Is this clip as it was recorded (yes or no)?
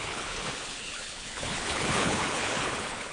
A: no